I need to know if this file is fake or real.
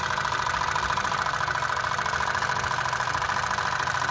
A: real